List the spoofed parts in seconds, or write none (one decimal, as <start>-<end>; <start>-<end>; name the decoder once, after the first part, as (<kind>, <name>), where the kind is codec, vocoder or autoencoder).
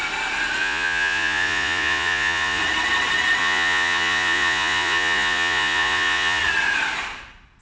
0.6-2.6 (vocoder, Vocos); 3.4-6.4